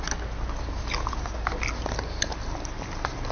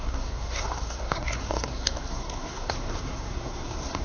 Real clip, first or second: first